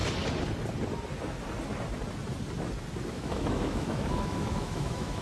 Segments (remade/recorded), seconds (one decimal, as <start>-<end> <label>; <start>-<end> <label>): 0.0-3.1 recorded; 3.1-5.2 remade

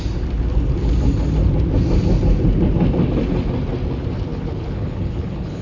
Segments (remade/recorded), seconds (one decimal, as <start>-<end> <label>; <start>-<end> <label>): 0.0-4.3 recorded; 4.3-5.6 remade

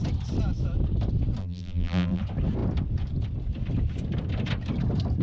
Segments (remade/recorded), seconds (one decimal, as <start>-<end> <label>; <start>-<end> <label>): 0.0-1.4 recorded; 1.4-2.2 remade; 2.2-5.2 recorded

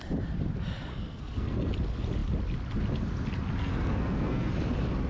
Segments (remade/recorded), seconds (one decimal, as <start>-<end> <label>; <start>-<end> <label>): 0.0-0.9 recorded; 0.9-1.7 remade; 1.7-3.6 recorded; 3.6-4.5 remade; 4.5-5.1 recorded

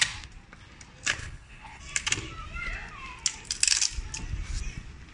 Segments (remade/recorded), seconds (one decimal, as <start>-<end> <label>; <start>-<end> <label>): 0.0-1.2 recorded; 1.2-1.8 remade; 1.8-5.1 recorded

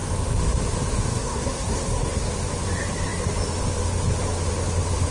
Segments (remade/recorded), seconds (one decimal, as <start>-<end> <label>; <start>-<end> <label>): 0.0-1.1 recorded; 1.1-2.3 remade; 2.3-5.1 recorded

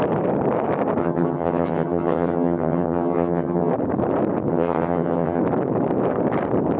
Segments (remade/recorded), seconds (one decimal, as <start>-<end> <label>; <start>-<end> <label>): 0.0-1.0 recorded; 1.0-3.7 remade; 3.7-4.5 recorded; 4.5-5.4 remade; 5.4-6.8 recorded